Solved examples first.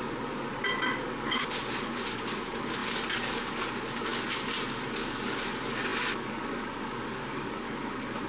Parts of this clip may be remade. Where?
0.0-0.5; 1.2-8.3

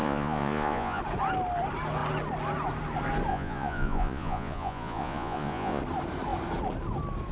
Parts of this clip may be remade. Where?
0.0-1.0; 3.3-5.8

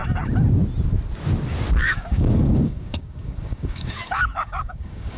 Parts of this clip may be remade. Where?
1.8-5.2

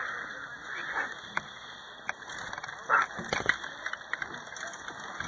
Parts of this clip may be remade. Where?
0.6-1.2

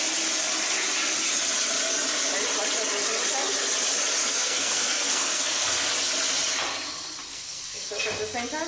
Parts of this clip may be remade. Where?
4.2-5.9; 7.3-8.0